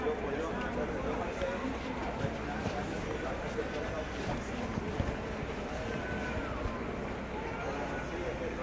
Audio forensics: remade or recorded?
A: recorded